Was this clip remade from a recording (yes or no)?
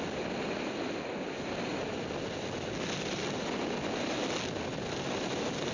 no